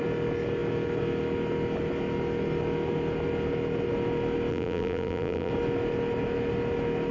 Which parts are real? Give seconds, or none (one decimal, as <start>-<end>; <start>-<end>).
0.0-4.5; 5.5-7.1